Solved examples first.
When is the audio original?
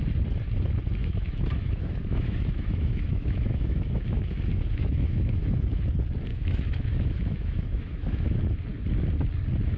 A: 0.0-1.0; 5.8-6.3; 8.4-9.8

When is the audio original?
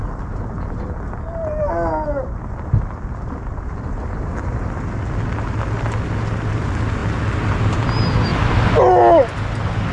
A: 0.0-9.9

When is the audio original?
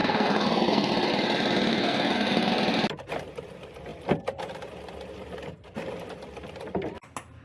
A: 0.9-1.7; 2.5-7.4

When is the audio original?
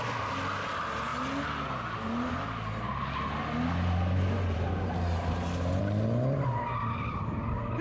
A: 0.0-7.8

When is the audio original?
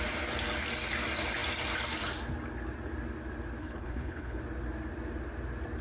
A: 0.0-3.6; 4.4-5.8